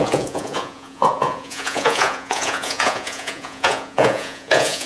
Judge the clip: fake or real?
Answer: fake